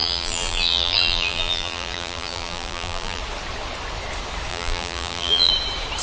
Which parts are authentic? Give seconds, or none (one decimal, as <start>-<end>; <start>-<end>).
3.2-4.5; 5.5-6.0